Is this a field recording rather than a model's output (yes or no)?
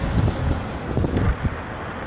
yes